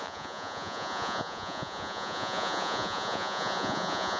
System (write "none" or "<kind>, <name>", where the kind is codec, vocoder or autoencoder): vocoder, Vocos